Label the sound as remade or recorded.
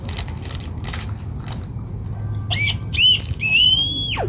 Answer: recorded